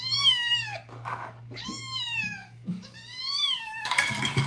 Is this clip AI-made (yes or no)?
yes